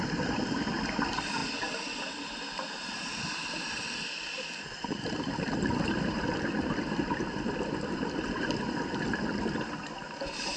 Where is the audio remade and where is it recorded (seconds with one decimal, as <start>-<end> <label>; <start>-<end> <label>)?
0.0-10.6 remade